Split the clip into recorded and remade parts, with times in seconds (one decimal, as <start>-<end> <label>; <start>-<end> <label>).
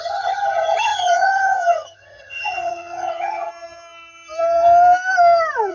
0.0-3.5 remade; 3.5-5.7 recorded